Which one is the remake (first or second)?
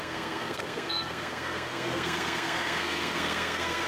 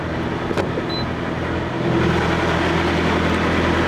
first